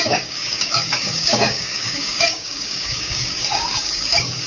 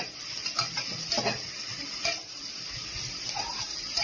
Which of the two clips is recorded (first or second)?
second